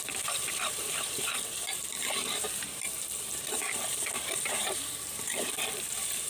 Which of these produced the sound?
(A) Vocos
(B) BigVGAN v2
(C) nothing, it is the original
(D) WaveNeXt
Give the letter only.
B